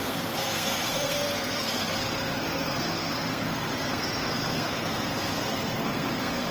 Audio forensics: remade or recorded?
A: remade